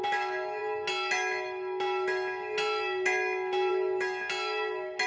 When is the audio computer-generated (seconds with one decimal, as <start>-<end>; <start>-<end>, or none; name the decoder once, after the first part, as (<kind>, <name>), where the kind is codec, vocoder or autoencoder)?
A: none